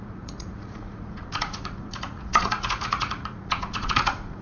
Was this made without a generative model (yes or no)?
no